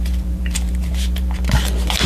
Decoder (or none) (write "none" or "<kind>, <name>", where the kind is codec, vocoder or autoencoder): vocoder, BigVGAN v2